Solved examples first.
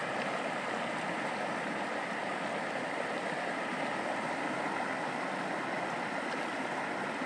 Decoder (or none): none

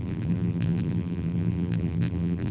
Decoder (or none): vocoder, BigVGAN v2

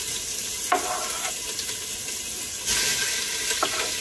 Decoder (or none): none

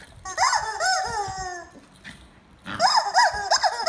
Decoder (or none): none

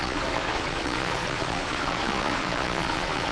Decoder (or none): vocoder, Vocos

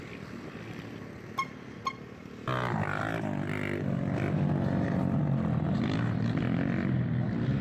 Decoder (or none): none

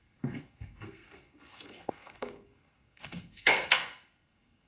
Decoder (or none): codec, SNAC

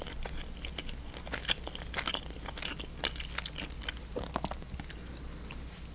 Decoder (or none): none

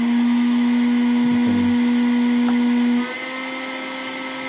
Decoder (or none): none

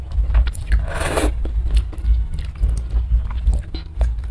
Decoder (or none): none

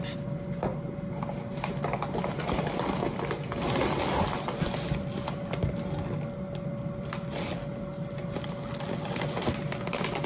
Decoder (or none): none